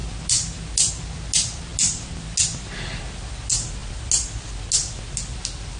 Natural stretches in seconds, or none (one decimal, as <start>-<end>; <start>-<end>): 0.0-5.8